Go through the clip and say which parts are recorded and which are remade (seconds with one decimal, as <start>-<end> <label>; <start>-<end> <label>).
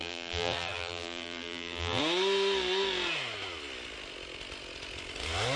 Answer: 0.0-2.0 remade; 2.0-5.6 recorded